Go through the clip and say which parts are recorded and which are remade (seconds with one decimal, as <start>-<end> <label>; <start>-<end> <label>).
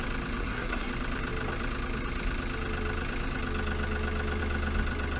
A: 0.0-0.4 recorded; 0.4-0.9 remade; 0.9-5.2 recorded